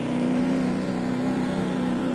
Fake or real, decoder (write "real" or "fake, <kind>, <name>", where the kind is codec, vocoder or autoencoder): fake, vocoder, BigVGAN v2